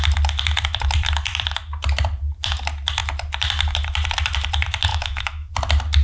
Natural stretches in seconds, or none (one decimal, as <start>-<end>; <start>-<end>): 0.0-4.9; 5.5-6.0